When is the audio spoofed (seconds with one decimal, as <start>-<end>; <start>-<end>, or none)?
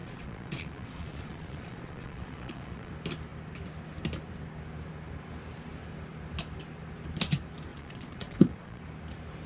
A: 0.0-2.9; 7.7-8.8